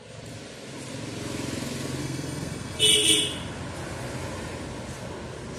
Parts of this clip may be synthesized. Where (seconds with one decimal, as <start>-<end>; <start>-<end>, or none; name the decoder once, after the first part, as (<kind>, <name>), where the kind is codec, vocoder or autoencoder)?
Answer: 2.0-2.8 (codec, SNAC)